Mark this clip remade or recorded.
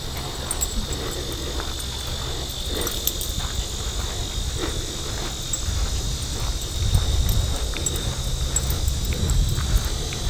recorded